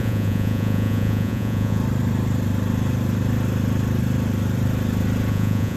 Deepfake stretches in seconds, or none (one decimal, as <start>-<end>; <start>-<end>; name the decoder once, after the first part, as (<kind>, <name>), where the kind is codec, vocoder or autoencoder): 0.0-1.8 (vocoder, Vocos); 5.3-5.8